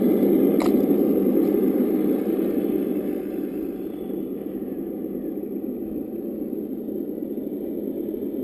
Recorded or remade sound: recorded